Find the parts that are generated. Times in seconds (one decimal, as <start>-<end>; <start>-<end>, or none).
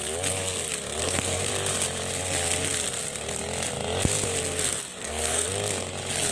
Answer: 1.0-1.5; 5.0-5.5